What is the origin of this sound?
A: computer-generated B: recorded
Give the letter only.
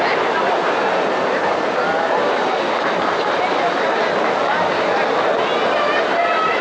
B